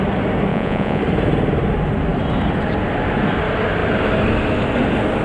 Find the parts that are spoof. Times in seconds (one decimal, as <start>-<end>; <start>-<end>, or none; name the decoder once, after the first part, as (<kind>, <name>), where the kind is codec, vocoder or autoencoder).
0.5-1.0 (vocoder, Vocos)